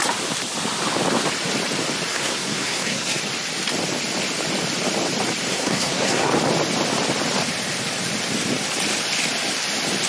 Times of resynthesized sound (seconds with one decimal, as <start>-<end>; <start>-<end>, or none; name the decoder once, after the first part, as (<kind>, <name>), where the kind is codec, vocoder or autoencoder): 2.1-3.2 (codec, SNAC); 5.5-6.3